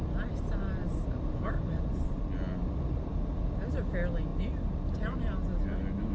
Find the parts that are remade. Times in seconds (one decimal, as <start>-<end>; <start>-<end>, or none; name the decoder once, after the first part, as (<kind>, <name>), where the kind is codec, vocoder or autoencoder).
0.8-3.2 (vocoder, BigVGAN v2)